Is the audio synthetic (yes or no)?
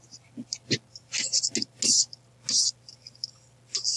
no